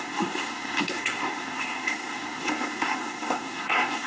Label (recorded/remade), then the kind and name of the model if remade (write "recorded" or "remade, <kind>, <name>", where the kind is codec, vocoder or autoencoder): remade, codec, SNAC